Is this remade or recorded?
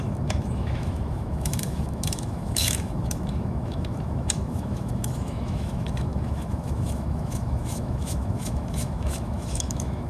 remade